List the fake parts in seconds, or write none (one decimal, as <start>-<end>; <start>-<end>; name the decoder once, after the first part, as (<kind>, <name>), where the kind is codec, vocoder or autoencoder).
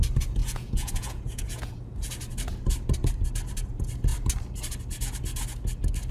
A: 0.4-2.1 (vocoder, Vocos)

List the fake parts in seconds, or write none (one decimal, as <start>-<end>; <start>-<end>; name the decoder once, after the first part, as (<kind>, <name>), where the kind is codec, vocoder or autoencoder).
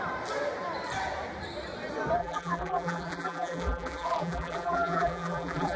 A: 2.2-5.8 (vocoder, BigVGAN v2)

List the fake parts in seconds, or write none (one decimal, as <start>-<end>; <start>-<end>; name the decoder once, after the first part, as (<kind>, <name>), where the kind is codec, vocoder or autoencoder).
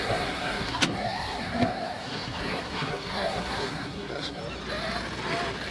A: 0.0-4.4 (codec, SNAC)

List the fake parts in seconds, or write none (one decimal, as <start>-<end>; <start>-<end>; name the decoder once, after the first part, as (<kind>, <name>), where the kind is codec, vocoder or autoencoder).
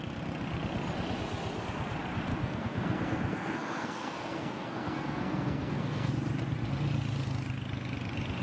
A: 2.3-6.1 (codec, SNAC)